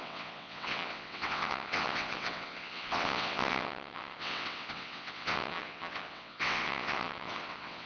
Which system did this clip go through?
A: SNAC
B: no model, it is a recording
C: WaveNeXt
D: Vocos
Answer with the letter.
C